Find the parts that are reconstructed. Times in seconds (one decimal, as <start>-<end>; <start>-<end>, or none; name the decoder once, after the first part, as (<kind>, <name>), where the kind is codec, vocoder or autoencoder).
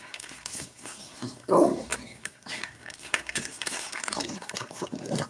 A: 0.0-5.3 (codec, SNAC)